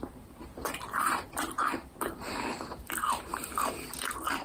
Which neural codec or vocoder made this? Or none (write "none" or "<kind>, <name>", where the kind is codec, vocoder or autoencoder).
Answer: vocoder, BigVGAN v2